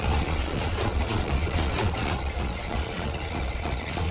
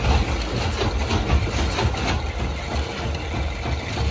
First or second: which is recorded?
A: second